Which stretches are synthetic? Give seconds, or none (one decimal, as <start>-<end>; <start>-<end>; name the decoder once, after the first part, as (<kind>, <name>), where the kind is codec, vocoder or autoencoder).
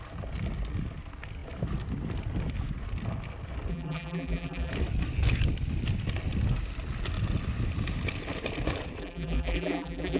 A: 3.7-4.7 (vocoder, BigVGAN v2); 9.0-10.2